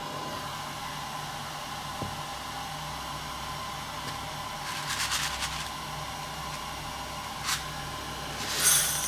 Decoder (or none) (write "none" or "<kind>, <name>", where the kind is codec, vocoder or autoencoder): none